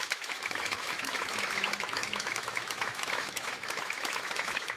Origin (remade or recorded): remade